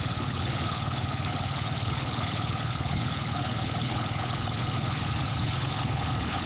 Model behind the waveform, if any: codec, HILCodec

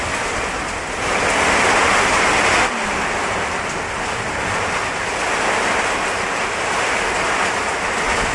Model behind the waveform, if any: none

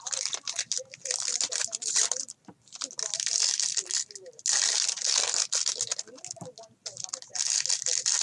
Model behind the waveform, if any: none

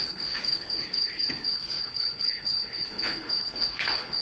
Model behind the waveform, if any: codec, HILCodec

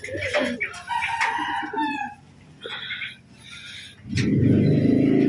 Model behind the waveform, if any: none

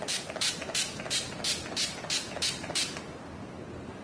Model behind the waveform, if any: none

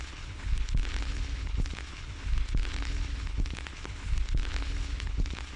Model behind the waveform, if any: codec, HILCodec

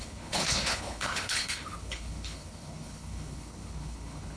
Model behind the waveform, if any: codec, HILCodec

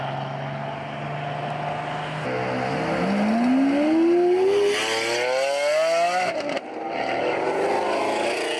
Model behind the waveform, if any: none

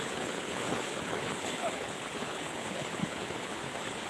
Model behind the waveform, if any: codec, HILCodec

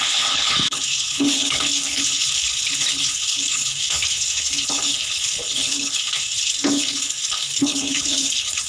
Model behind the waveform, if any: codec, HILCodec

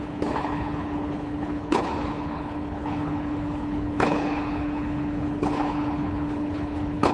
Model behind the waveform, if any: codec, HILCodec